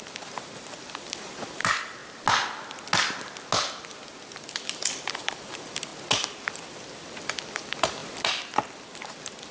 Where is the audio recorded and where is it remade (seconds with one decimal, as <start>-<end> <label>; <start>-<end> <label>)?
0.0-2.0 remade; 2.0-4.4 recorded; 4.4-5.9 remade; 5.9-6.5 recorded; 6.5-8.0 remade; 8.0-8.8 recorded; 8.8-9.5 remade